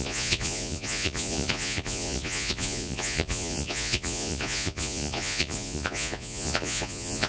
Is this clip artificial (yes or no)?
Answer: yes